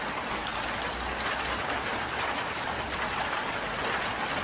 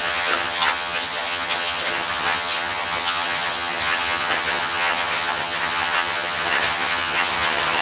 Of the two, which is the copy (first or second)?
second